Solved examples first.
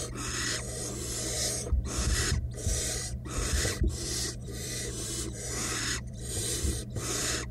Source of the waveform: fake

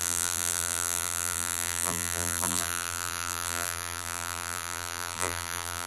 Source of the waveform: fake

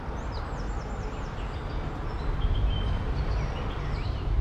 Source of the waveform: real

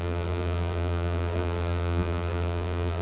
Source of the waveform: fake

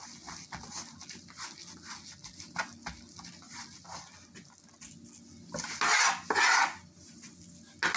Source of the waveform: real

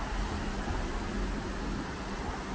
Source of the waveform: real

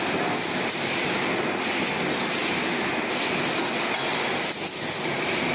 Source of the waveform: real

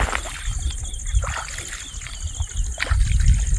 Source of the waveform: real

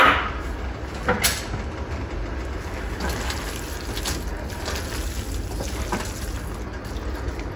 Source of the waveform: real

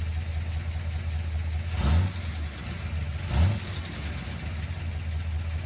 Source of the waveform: real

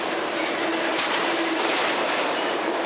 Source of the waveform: fake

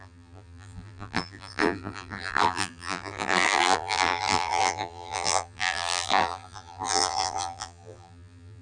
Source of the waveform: fake